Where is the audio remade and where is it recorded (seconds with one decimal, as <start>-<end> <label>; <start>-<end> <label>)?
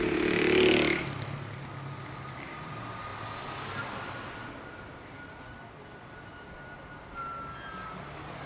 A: 0.0-8.5 recorded